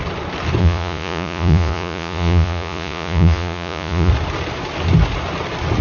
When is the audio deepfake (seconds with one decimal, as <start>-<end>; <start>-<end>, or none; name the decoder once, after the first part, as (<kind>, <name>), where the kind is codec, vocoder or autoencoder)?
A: 0.6-4.1 (vocoder, Vocos)